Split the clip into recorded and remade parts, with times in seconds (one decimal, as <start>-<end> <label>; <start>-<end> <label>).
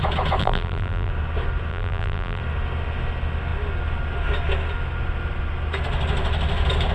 0.0-0.4 recorded; 0.4-1.1 remade; 1.1-1.7 recorded; 1.7-2.4 remade; 2.4-6.9 recorded